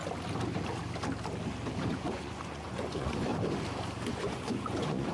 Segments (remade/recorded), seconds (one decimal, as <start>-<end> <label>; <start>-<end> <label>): 0.0-1.8 recorded; 1.8-3.3 remade; 3.3-4.1 recorded; 4.1-5.1 remade

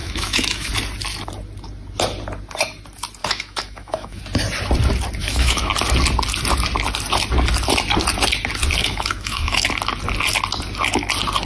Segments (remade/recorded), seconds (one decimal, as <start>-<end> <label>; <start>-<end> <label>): 0.0-0.7 remade; 0.7-3.2 recorded; 3.2-4.2 remade; 4.2-5.2 recorded; 5.2-5.7 remade; 5.7-8.8 recorded; 8.8-9.7 remade; 9.7-11.5 recorded

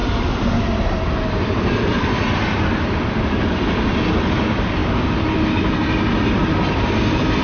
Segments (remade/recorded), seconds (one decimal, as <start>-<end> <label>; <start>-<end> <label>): 0.0-7.4 remade